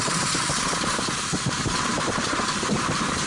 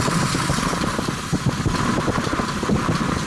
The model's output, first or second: first